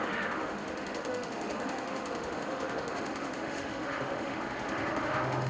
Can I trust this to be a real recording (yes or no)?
no